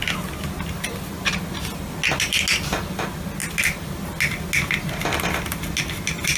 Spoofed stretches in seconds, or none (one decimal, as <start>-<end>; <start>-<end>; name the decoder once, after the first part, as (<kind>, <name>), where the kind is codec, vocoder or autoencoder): none